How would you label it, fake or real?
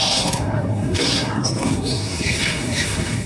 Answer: fake